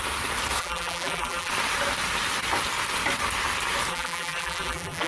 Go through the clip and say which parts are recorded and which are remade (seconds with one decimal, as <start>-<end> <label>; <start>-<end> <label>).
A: 0.0-0.6 recorded; 0.6-1.5 remade; 1.5-3.9 recorded; 3.9-5.1 remade